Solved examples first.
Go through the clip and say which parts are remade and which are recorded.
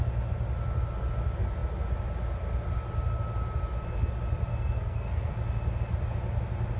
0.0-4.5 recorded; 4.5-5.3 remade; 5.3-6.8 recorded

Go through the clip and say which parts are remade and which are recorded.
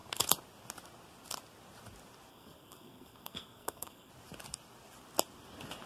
0.0-2.3 recorded; 2.3-4.1 remade; 4.1-5.9 recorded